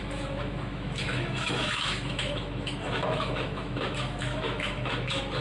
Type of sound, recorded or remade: remade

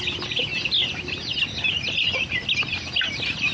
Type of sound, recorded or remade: recorded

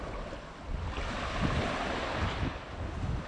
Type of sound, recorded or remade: recorded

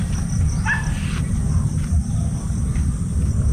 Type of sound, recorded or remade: recorded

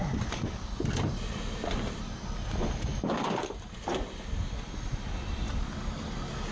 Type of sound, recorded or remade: recorded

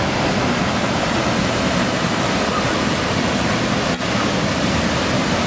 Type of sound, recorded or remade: recorded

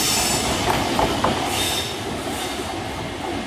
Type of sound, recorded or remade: recorded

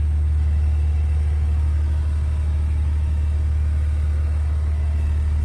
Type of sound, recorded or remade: remade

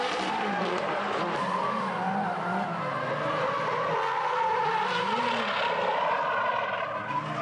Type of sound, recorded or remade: recorded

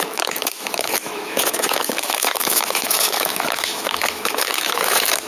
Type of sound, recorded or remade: remade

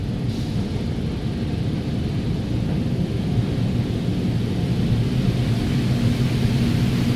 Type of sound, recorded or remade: recorded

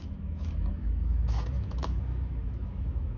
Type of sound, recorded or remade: remade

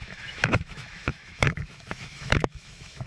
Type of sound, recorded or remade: remade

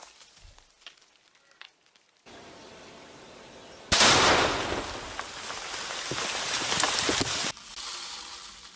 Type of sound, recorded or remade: recorded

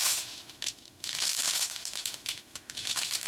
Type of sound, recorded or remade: remade